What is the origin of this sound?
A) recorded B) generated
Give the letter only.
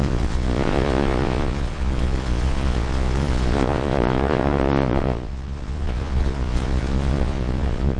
B